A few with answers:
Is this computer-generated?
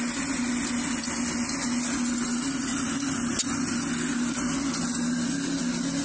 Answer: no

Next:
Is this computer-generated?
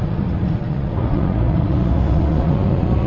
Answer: yes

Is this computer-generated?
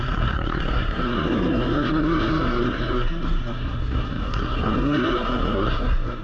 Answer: yes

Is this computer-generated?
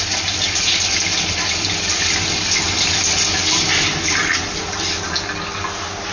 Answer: no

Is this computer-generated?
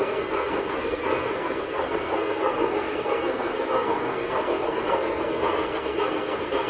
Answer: yes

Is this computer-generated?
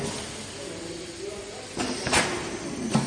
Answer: no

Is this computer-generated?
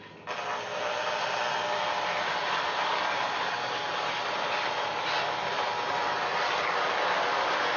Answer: no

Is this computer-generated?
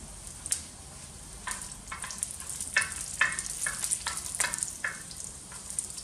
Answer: no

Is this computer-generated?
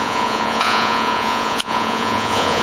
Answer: yes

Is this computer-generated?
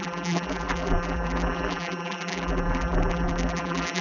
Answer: yes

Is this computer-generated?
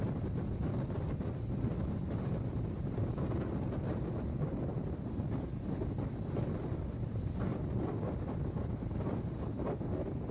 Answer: no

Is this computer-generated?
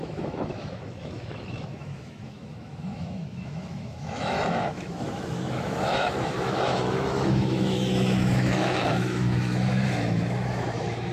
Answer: yes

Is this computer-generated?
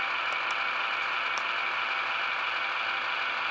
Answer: no